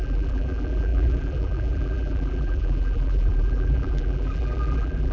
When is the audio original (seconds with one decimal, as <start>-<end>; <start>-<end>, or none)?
none